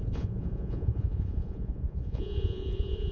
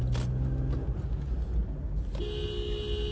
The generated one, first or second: first